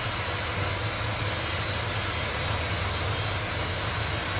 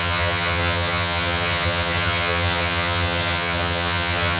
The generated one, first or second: second